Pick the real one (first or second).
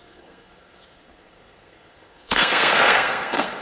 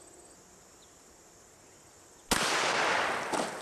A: second